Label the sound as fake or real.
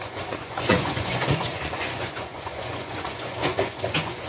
fake